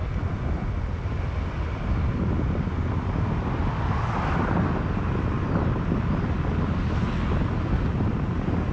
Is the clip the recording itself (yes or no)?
yes